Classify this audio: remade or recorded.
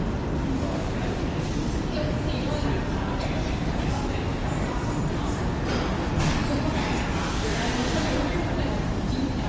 recorded